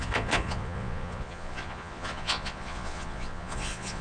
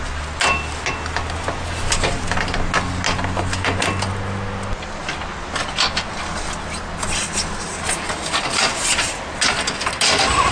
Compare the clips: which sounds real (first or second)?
second